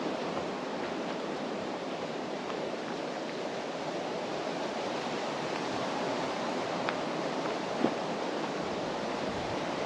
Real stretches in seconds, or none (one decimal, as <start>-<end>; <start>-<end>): 4.3-4.8